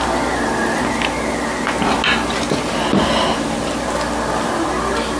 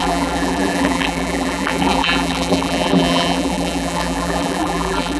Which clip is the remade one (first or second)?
second